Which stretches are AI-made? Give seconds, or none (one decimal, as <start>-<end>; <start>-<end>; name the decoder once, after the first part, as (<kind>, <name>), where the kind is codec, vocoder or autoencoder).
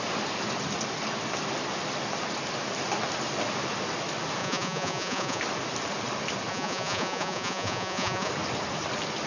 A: 4.4-5.4 (vocoder, Vocos); 6.5-8.3